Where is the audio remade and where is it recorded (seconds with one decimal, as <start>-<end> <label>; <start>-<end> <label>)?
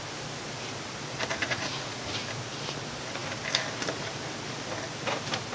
0.0-1.4 recorded; 1.4-2.1 remade; 2.1-5.5 recorded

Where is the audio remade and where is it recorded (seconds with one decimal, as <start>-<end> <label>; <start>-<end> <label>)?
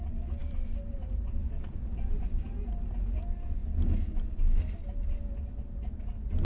0.0-6.4 recorded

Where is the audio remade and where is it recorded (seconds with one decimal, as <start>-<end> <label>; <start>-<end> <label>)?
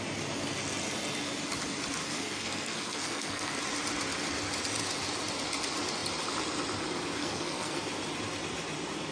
0.0-2.0 recorded; 2.0-3.6 remade; 3.6-7.2 recorded; 7.2-7.8 remade; 7.8-9.1 recorded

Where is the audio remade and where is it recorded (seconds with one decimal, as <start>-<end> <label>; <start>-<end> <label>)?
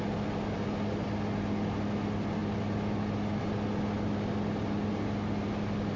0.0-6.0 recorded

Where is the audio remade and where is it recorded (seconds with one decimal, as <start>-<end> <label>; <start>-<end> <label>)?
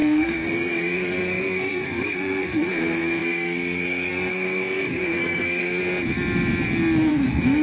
0.0-5.8 remade; 5.8-7.1 recorded; 7.1-7.6 remade